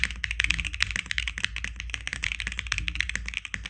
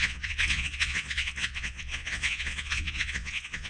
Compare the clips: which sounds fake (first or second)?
second